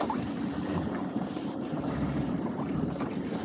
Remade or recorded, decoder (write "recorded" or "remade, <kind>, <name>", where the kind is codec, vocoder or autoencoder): remade, vocoder, BigVGAN v2